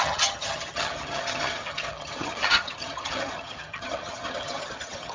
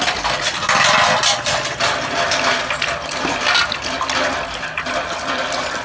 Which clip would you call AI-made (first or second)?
first